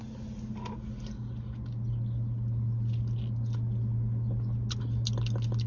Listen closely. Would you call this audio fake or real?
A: real